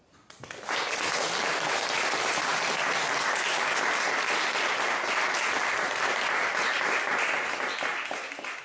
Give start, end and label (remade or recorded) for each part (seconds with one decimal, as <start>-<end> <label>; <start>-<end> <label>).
0.0-8.6 recorded